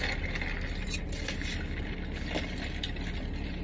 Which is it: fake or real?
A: real